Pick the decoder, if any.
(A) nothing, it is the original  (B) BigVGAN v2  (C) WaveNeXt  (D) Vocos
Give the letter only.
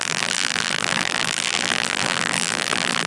B